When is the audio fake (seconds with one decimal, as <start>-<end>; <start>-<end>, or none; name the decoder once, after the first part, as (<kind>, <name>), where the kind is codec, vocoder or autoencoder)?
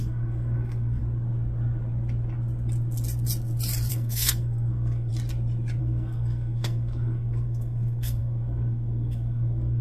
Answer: 0.0-1.0 (codec, SNAC); 3.9-5.1; 5.8-9.8